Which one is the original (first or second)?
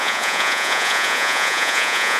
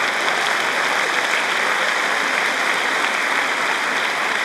second